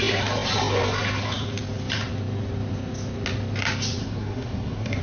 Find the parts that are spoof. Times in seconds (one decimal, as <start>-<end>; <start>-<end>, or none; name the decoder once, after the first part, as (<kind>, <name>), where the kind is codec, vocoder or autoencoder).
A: 4.0-5.0 (codec, SNAC)